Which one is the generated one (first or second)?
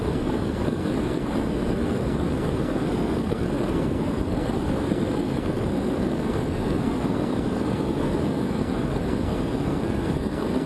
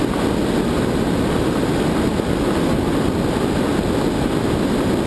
first